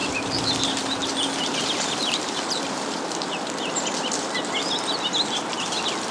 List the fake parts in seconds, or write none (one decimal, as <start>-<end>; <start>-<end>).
0.0-0.6; 1.0-4.7